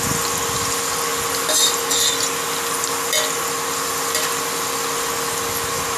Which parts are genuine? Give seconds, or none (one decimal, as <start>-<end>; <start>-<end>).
0.0-6.0